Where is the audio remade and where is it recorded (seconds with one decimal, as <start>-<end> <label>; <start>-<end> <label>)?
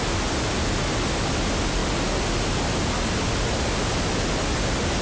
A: 0.0-5.0 recorded